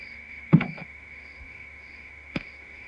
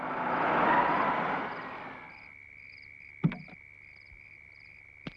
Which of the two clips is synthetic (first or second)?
first